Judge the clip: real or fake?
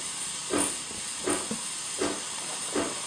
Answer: real